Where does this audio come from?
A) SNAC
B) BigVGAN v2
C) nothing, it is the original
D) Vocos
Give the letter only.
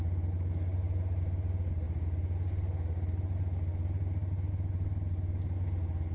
C